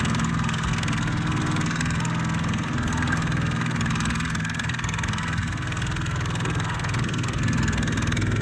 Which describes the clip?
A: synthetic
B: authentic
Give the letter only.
A